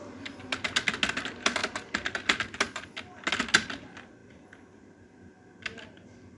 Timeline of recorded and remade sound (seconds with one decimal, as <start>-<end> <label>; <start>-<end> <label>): 0.0-6.4 recorded